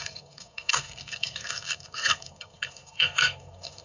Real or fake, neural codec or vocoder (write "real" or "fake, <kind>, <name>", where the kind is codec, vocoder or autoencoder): fake, codec, SNAC